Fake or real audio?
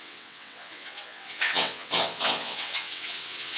fake